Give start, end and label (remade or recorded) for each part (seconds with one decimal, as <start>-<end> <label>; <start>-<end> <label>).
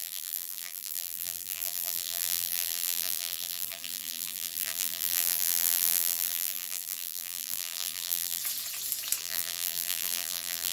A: 0.0-8.4 remade; 8.4-9.2 recorded; 9.2-10.7 remade